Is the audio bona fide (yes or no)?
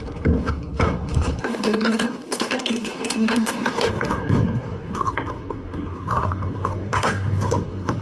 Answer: no